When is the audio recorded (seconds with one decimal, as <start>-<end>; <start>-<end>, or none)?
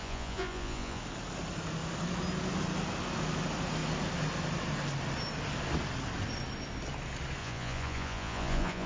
1.0-7.4